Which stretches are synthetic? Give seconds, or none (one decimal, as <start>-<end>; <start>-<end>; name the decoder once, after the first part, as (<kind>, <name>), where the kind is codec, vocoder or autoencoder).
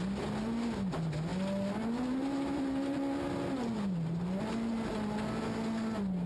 none